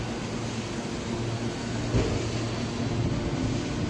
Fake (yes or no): no